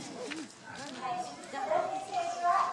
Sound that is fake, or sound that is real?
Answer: real